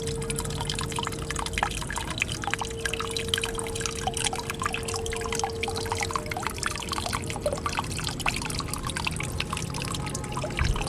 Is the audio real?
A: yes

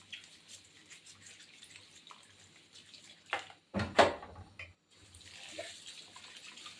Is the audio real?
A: yes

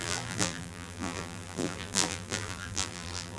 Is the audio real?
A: no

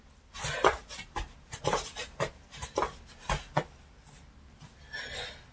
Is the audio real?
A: yes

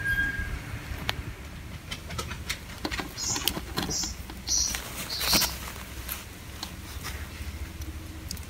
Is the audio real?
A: yes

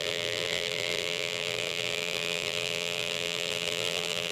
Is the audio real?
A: no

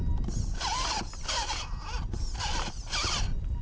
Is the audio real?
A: yes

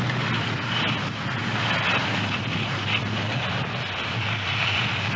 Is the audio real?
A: yes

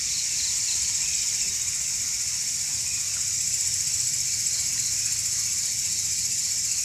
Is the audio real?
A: yes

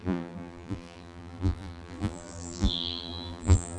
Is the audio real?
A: no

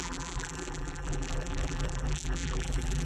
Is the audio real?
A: no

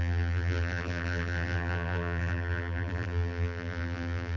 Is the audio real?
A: no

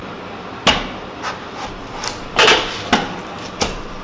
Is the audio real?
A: yes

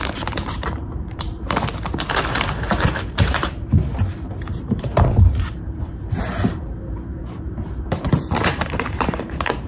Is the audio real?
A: no